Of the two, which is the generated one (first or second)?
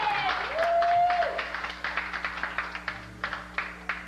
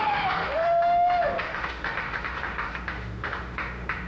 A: second